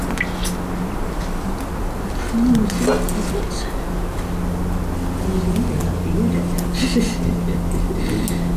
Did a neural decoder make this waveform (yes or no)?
no